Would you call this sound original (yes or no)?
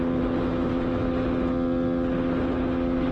yes